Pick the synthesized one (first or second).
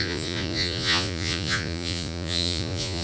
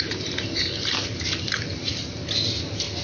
first